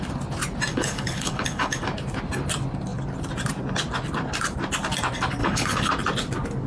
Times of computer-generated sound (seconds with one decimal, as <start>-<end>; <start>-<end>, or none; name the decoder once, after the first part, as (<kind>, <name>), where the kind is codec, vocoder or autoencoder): 0.7-1.8 (codec, HILCodec); 5.4-5.9

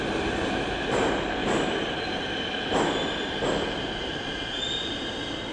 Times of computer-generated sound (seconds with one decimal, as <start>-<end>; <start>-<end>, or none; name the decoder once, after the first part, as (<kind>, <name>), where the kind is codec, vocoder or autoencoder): none

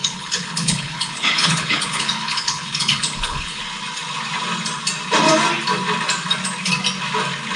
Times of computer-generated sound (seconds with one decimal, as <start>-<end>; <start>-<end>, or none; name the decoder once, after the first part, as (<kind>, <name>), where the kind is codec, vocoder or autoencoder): 0.0-3.6 (codec, HILCodec)

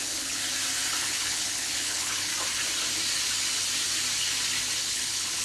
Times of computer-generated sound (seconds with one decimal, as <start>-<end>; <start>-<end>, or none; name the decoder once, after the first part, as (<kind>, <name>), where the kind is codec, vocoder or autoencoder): 0.0-0.4 (codec, HILCodec); 1.0-2.3; 4.8-5.4

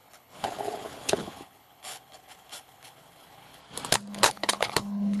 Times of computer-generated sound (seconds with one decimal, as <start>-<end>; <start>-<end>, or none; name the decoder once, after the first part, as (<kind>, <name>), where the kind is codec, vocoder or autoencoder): 0.0-3.6 (codec, HILCodec); 4.1-5.2

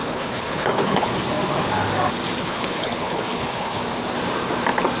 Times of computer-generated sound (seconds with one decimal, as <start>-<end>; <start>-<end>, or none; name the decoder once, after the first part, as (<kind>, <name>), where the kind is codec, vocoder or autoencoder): 0.0-1.1 (codec, HILCodec); 2.4-3.8